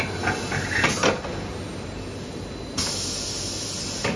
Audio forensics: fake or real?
real